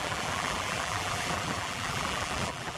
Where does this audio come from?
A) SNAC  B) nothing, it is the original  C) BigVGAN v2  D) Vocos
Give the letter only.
C